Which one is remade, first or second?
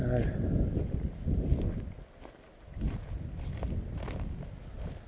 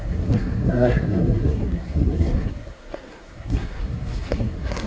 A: second